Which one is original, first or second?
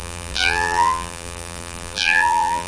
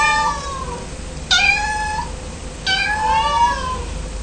second